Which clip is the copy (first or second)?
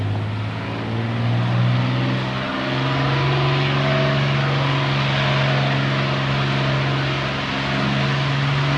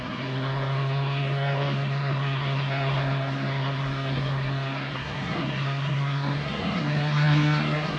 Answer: second